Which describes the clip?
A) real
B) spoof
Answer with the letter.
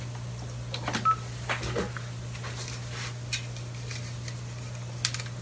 A